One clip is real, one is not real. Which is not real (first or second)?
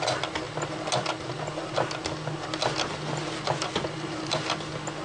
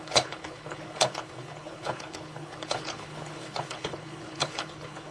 second